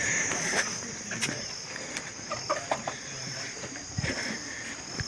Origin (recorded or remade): recorded